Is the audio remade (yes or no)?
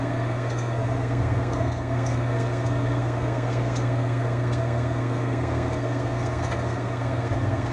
yes